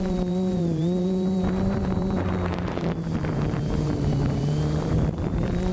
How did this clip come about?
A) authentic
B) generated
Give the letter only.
B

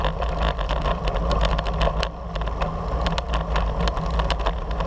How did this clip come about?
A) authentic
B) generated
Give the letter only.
A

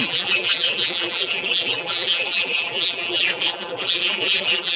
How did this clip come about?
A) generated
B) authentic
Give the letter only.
A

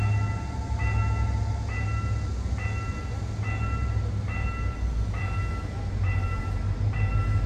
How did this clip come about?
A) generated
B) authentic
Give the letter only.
B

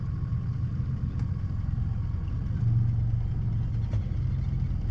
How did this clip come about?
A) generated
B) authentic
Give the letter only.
B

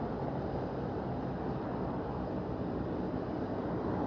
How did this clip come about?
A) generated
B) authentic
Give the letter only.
B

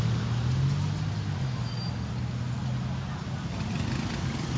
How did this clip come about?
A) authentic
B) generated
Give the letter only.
A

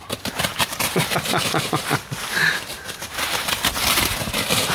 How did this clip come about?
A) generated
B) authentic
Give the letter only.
A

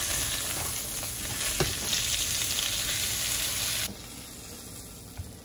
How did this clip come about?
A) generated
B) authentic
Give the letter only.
B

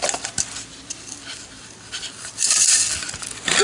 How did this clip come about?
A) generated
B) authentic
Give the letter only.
B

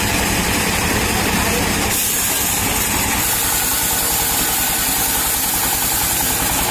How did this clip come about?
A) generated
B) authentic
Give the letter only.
A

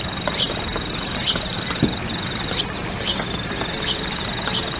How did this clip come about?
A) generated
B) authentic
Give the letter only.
B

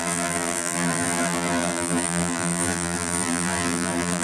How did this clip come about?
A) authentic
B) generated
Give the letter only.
B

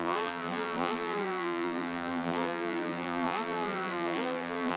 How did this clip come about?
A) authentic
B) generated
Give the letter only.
B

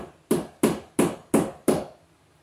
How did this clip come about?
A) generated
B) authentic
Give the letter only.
B